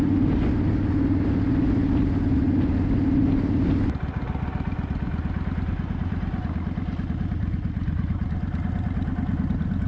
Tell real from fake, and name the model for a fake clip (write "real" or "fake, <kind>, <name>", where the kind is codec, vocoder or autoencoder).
real